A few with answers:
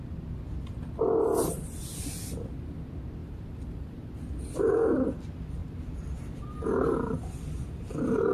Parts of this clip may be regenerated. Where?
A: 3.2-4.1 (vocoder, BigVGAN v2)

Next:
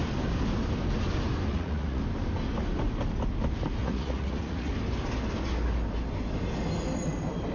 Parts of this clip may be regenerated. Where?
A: 1.5-2.0 (vocoder, Vocos); 3.8-4.7

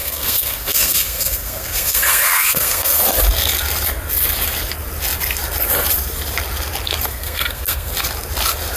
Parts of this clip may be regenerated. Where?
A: 0.0-3.0 (codec, SNAC); 7.1-7.9

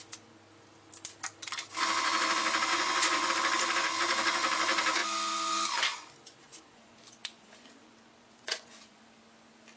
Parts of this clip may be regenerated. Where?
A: 2.7-3.3 (vocoder, Vocos); 5.9-9.0

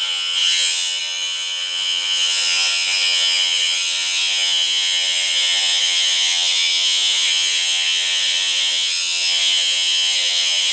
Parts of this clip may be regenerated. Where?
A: 0.0-10.7 (vocoder, HiFi-GAN)